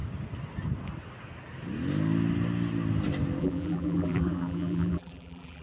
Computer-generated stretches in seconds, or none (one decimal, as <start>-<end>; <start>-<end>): 3.4-5.6